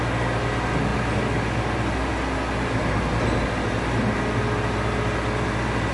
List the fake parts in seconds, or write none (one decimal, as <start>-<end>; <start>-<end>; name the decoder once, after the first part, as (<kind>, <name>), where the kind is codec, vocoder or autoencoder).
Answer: none